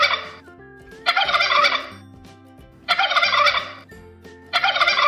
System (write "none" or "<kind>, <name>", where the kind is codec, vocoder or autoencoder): vocoder, BigVGAN v2